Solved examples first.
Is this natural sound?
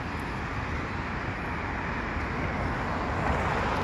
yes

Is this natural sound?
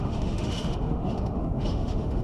no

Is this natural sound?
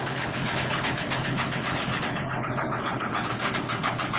no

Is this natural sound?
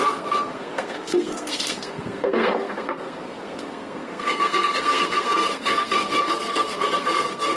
no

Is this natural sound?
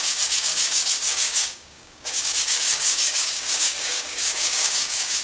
no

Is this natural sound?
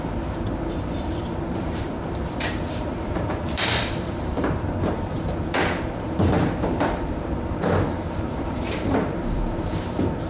no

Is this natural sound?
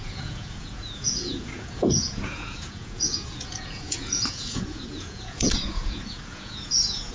no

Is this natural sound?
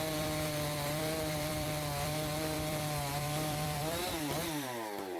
no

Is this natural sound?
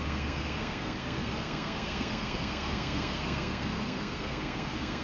no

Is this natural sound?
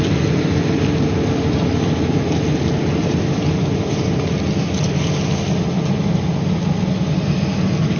yes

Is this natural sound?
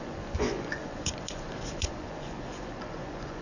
no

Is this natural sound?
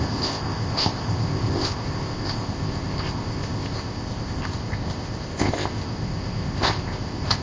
no